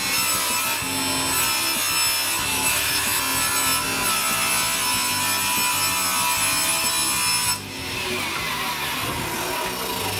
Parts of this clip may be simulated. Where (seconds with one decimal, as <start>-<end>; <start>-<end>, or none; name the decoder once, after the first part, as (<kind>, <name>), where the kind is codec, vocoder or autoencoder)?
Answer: 2.5-3.2 (autoencoder, DAC-VAE)